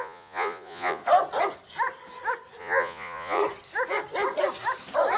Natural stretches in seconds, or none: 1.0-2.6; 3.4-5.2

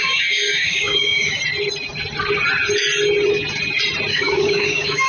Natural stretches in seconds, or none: 1.4-4.1

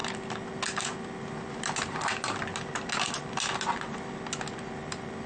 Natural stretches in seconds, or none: 0.0-5.3

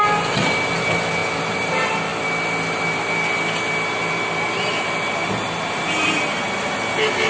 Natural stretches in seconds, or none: 0.0-7.3

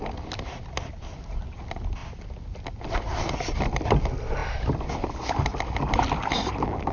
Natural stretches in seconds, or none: 0.0-6.9